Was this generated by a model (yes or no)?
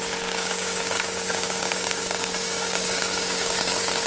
yes